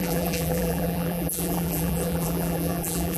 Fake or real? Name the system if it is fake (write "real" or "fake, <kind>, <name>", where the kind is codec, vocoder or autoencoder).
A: fake, vocoder, BigVGAN v2